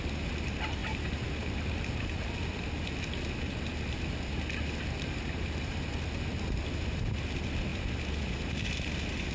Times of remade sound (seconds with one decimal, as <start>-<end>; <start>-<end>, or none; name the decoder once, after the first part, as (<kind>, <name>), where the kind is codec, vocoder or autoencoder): none